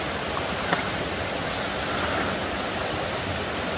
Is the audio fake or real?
real